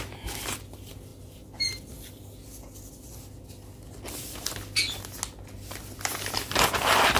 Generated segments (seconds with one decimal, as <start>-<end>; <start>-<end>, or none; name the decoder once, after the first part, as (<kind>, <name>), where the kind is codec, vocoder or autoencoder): 1.1-1.8 (vocoder, BigVGAN v2)